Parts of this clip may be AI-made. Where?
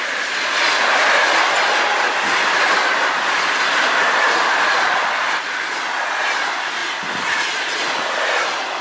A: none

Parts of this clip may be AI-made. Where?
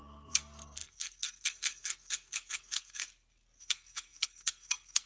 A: 0.0-3.0 (codec, SNAC); 3.6-5.1